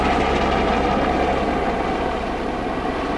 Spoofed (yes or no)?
no